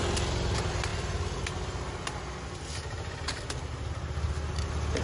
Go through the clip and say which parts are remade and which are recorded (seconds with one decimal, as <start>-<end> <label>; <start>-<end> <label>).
0.0-5.0 recorded